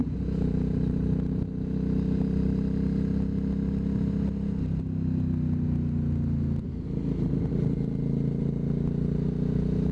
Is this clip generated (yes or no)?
no